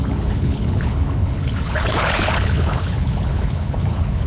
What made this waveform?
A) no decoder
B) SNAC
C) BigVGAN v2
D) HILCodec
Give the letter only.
D